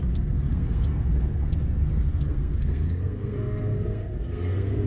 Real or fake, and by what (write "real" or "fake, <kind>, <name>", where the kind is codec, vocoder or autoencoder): fake, codec, SNAC